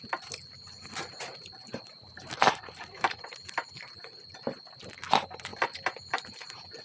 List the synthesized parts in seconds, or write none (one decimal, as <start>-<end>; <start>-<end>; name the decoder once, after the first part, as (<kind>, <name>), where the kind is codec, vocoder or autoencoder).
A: 1.7-3.7 (vocoder, BigVGAN v2)